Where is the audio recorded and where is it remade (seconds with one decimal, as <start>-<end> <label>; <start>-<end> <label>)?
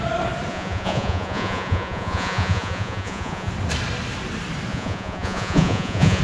0.0-0.5 recorded; 0.5-3.5 remade; 3.5-4.7 recorded; 4.7-6.2 remade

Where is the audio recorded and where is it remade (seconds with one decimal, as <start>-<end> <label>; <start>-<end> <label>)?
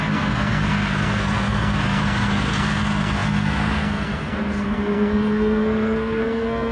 0.0-6.7 remade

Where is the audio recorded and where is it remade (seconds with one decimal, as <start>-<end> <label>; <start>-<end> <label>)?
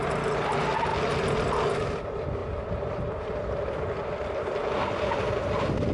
0.0-5.9 recorded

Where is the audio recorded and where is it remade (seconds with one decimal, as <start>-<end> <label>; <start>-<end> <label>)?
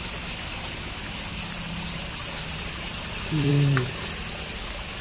0.0-2.2 recorded; 2.2-3.5 remade; 3.5-5.0 recorded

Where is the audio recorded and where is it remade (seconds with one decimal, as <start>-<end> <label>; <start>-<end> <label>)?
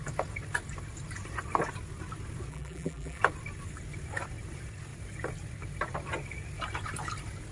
0.0-2.5 recorded; 2.5-3.2 remade; 3.2-7.5 recorded